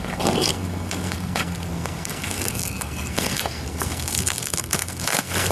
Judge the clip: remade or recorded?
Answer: remade